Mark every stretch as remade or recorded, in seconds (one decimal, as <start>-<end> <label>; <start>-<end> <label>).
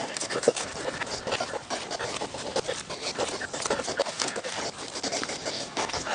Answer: 0.0-0.7 remade; 0.7-4.0 recorded; 4.0-4.6 remade; 4.6-5.5 recorded; 5.5-6.1 remade